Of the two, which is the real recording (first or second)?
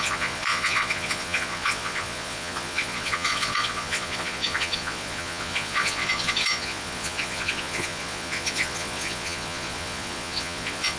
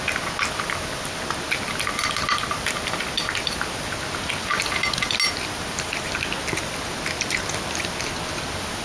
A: second